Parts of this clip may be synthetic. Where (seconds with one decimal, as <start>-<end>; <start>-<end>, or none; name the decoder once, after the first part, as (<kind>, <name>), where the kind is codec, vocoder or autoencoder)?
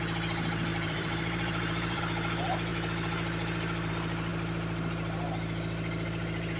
0.7-2.0 (vocoder, BigVGAN v2)